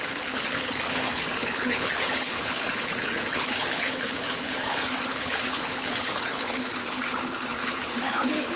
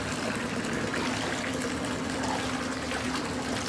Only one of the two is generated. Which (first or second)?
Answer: first